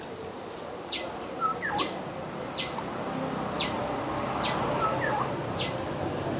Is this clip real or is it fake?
real